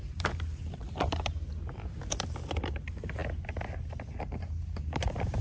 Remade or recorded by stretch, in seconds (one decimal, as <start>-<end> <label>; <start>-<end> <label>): 0.0-1.5 remade; 1.5-2.6 recorded; 2.6-3.2 remade; 3.2-4.2 recorded; 4.2-5.4 remade

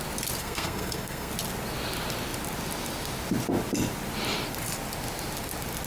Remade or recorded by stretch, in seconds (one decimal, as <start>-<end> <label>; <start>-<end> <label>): 0.0-0.4 recorded; 0.4-1.3 remade; 1.3-5.9 recorded

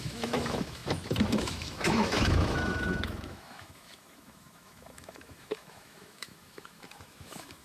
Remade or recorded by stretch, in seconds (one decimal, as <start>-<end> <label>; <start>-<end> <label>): 0.0-7.6 remade